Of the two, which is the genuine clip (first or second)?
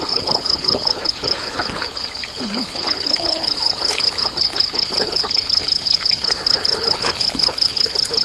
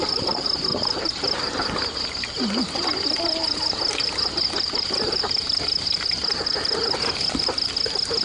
second